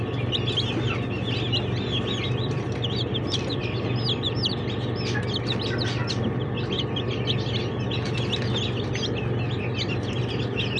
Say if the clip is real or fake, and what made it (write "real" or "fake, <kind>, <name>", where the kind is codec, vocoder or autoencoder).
real